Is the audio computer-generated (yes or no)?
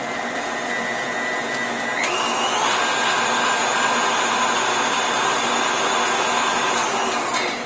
no